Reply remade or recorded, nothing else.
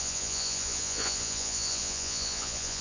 remade